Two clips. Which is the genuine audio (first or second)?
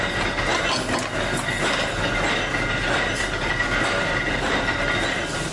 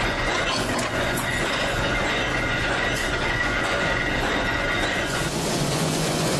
first